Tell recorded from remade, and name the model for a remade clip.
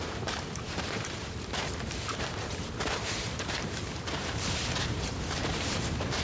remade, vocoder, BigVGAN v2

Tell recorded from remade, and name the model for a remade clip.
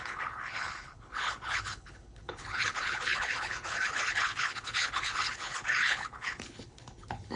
remade, codec, HILCodec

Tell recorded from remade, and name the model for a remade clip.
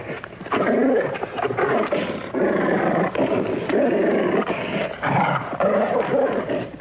remade, vocoder, BigVGAN v2